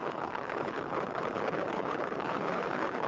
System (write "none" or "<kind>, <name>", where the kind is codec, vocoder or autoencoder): codec, HILCodec